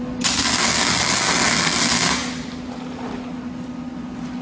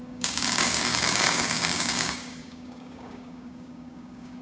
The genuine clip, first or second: first